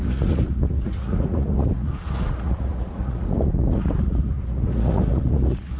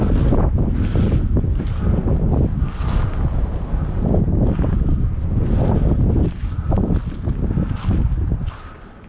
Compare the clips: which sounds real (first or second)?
second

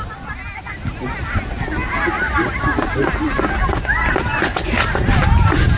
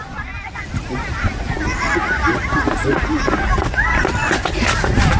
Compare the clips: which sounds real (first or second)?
first